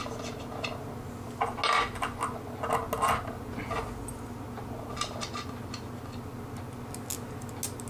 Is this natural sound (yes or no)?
yes